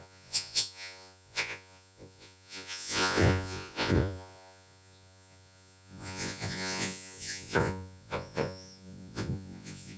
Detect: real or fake fake